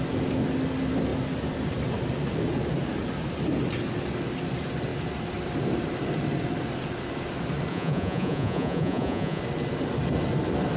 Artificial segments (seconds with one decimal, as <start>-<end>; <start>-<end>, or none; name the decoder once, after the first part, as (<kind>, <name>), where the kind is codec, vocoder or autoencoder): 7.7-9.4 (vocoder, Vocos)